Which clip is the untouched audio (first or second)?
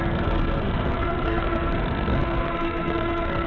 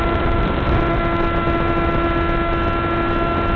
second